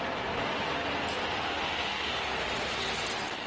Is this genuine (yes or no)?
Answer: yes